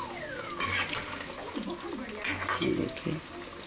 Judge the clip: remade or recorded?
recorded